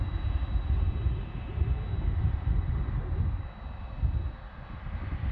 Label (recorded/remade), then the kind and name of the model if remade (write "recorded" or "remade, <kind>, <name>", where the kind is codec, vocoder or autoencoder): recorded